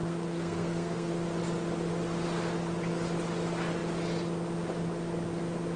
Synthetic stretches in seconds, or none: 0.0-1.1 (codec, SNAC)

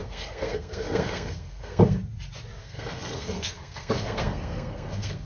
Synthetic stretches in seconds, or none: 0.0-2.0 (codec, SNAC); 2.6-5.3

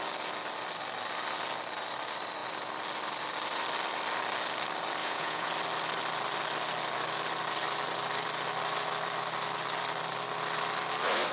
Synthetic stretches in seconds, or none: 5.0-5.5 (vocoder, Vocos)